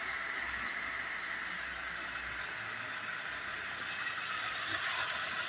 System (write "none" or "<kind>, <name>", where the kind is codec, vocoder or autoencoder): none